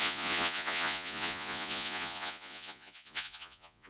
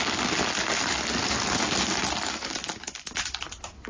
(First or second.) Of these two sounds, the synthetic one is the first